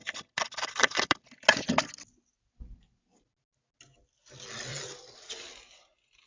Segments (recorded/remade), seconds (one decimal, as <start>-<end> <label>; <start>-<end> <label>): 0.0-6.3 recorded